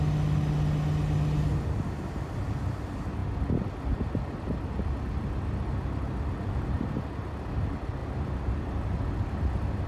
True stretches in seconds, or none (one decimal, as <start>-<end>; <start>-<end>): 0.0-9.9